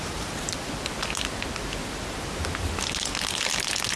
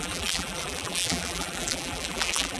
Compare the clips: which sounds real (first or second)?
first